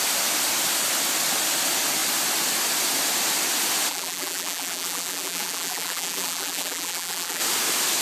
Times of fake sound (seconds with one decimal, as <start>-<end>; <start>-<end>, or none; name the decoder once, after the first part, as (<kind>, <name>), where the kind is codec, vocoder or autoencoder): 3.9-7.4 (vocoder, BigVGAN v2)